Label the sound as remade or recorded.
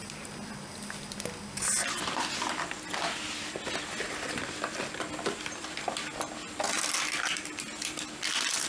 recorded